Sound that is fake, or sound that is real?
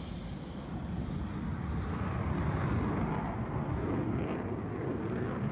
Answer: real